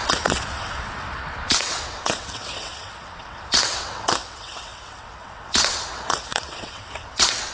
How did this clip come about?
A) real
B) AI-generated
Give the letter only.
B